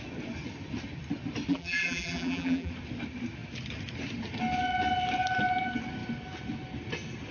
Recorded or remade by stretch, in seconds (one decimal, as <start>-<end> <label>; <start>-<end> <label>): 0.0-1.5 recorded; 1.5-2.7 remade; 2.7-7.3 recorded